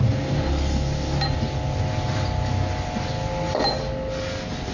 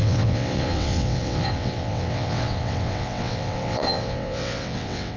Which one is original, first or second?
first